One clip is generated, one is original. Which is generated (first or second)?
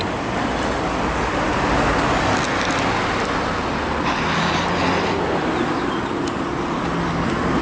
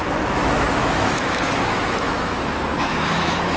second